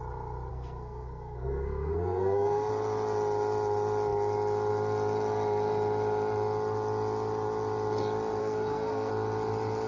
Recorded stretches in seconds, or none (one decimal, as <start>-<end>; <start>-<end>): 0.0-0.5; 2.7-8.4; 9.1-9.9